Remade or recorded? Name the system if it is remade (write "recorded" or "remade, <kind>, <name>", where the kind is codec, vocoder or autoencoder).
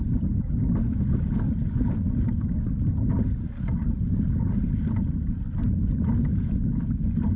recorded